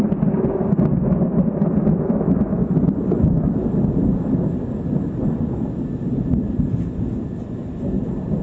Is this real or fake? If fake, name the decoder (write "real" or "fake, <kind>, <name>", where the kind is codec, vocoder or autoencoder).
real